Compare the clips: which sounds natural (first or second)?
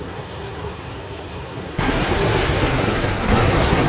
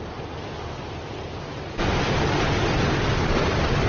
second